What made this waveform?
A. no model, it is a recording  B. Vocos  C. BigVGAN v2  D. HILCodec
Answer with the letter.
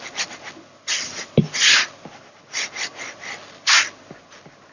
A